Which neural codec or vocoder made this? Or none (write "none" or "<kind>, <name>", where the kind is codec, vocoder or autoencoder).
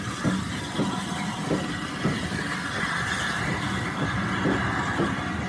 none